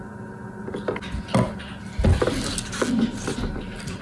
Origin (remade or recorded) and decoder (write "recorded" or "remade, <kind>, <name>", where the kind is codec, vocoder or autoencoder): recorded